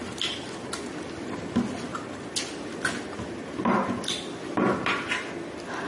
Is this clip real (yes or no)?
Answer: yes